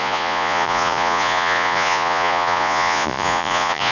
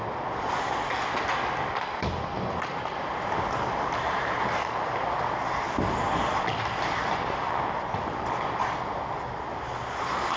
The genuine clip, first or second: second